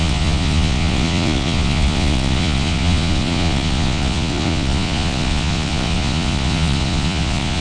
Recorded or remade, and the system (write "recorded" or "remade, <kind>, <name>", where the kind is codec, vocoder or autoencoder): remade, vocoder, Vocos